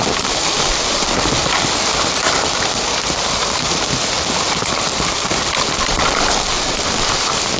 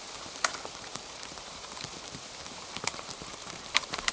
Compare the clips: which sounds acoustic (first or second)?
first